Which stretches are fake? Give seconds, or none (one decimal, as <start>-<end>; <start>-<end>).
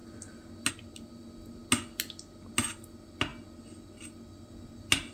none